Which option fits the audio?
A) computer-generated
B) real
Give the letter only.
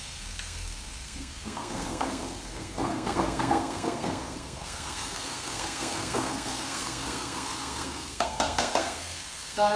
A